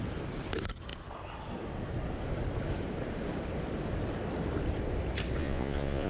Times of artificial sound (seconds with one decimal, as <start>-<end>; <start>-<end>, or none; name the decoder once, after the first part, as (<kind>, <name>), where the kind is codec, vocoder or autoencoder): 5.4-6.1 (vocoder, Vocos)